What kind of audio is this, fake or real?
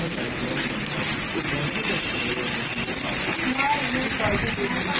real